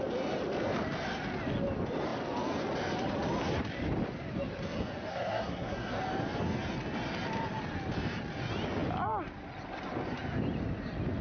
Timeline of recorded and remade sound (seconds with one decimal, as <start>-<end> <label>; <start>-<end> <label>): 0.0-5.1 recorded; 5.1-6.0 remade; 6.0-11.2 recorded